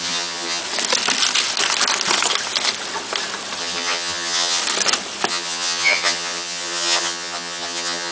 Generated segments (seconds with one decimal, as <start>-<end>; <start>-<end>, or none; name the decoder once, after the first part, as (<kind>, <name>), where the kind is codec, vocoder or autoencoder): 0.0-0.6 (vocoder, HiFi-GAN); 3.6-4.6; 5.3-8.1